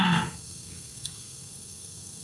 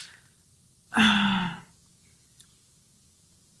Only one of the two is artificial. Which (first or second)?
first